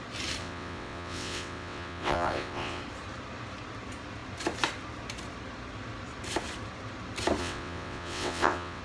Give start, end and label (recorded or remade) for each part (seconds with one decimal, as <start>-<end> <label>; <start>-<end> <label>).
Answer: 0.0-0.4 recorded; 0.4-2.8 remade; 2.8-7.4 recorded; 7.4-8.8 remade